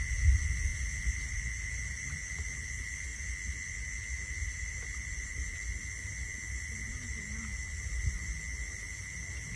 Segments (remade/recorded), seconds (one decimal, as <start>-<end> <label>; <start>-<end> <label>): 0.0-9.6 recorded